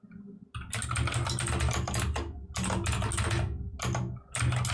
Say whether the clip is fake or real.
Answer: real